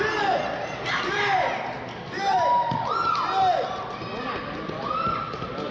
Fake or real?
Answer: real